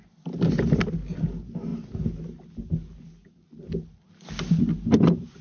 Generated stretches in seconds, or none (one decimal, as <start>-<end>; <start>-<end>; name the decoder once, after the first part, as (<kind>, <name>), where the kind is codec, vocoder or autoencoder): none